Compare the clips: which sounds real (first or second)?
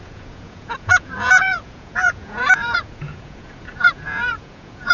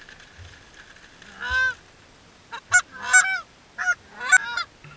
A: second